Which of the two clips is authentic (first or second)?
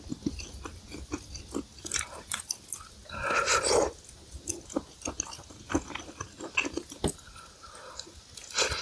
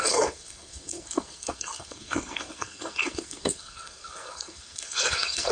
first